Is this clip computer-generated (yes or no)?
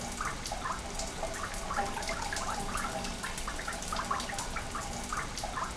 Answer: no